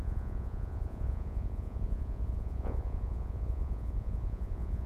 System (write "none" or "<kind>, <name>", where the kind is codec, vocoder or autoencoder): vocoder, Vocos